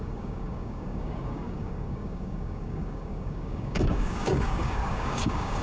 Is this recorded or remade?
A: remade